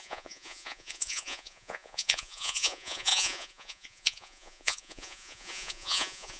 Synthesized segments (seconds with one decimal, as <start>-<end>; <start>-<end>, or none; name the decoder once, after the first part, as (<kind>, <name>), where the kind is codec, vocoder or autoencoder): 0.0-6.4 (vocoder, Vocos)